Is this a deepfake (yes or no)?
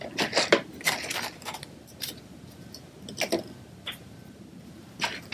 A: no